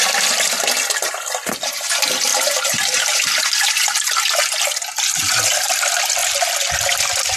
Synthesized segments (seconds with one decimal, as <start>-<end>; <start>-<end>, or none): none